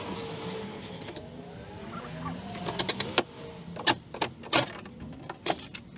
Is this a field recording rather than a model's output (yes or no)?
yes